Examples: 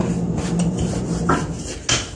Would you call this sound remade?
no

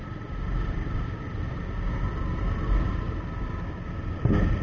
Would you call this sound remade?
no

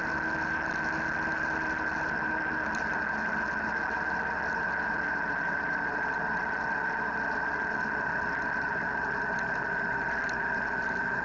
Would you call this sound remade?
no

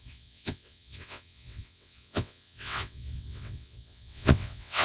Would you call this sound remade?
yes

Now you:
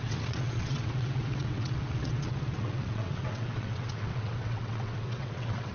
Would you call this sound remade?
yes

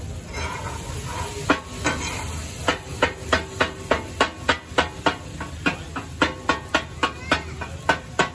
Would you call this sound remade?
no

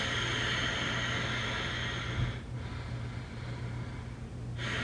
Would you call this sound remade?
no